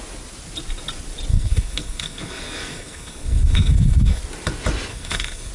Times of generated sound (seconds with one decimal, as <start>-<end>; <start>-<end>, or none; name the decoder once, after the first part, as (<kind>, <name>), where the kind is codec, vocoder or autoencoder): 1.3-4.2 (codec, SNAC); 4.9-5.5

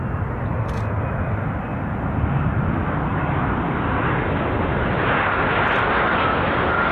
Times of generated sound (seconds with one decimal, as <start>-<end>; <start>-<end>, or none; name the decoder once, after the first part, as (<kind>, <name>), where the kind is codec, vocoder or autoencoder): none

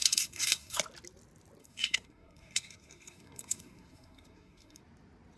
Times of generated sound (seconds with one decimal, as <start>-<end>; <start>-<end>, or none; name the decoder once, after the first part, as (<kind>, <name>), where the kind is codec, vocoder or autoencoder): 0.0-0.8 (codec, SNAC); 1.6-4.8